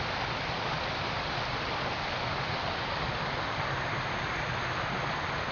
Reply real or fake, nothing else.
real